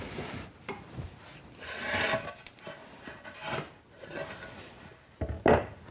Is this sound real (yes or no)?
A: yes